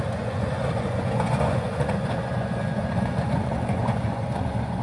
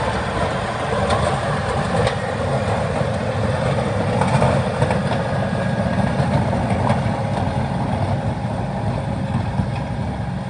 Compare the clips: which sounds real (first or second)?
second